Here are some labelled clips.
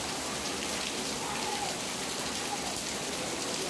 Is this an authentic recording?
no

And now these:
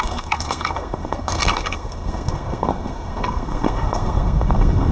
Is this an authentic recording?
no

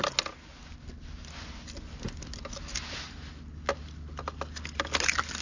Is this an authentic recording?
yes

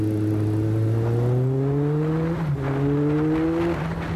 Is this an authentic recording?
yes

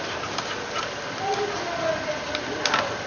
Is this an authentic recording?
yes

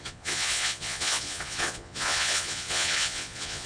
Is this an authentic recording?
no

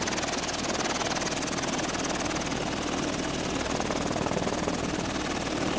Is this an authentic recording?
yes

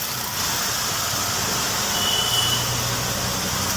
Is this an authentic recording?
yes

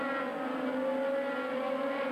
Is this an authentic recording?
yes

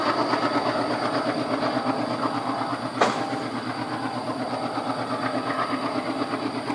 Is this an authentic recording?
yes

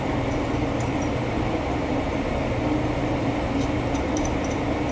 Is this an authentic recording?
yes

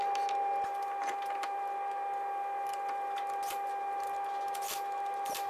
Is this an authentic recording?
yes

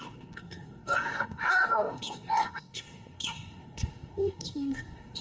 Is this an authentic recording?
no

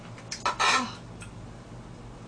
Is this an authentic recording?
yes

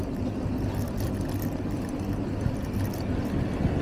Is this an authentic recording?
yes